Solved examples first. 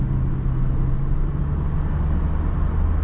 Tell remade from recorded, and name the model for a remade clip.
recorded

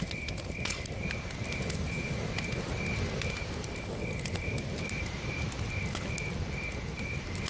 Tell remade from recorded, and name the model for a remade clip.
recorded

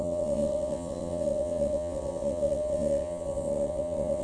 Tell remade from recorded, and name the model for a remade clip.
remade, vocoder, WaveNeXt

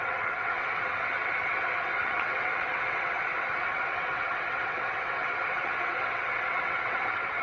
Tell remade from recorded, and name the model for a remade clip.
remade, vocoder, WaveNeXt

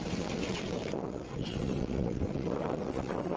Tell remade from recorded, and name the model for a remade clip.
remade, vocoder, WaveNeXt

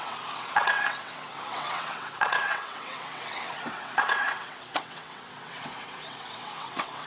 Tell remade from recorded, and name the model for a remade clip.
remade, vocoder, WaveNeXt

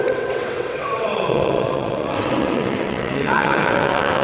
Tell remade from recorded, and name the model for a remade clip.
remade, vocoder, WaveNeXt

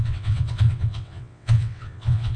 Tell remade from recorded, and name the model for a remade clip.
remade, vocoder, WaveNeXt